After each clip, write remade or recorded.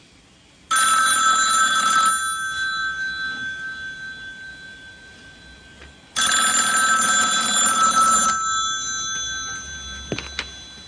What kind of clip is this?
recorded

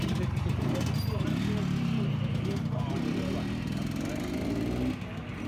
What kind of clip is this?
recorded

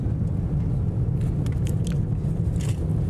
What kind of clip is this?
recorded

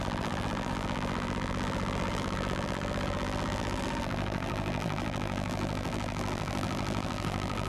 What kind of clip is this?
remade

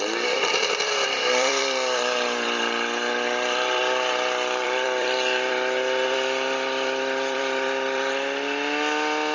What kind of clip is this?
remade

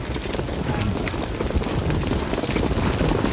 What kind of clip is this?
recorded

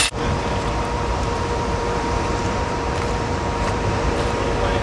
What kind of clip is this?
remade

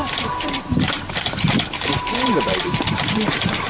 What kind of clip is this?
remade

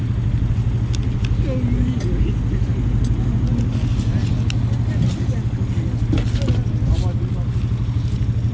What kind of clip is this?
recorded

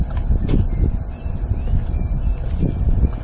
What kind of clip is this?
remade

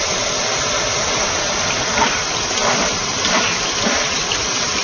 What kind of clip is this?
recorded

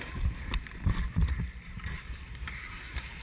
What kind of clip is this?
remade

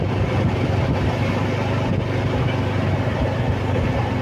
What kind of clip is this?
recorded